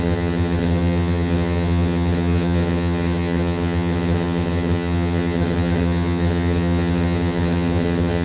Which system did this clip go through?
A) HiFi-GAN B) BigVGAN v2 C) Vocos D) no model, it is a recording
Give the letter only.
A